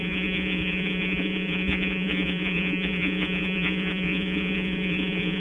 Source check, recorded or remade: remade